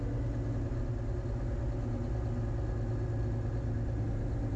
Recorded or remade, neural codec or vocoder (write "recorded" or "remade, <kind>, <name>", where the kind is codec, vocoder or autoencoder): recorded